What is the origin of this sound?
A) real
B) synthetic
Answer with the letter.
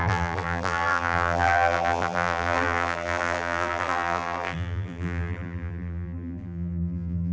B